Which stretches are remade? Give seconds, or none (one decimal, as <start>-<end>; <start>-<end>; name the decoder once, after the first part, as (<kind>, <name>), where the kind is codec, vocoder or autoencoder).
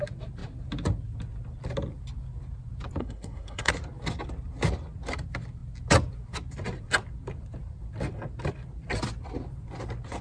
3.0-3.7 (codec, SNAC)